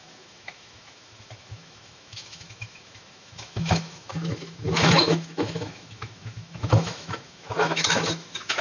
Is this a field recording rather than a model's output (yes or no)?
no